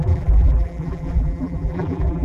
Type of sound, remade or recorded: remade